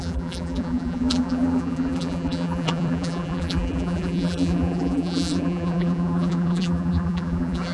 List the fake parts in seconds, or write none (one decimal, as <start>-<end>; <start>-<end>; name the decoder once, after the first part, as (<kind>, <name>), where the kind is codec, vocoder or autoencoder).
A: 0.0-7.7 (vocoder, BigVGAN v2)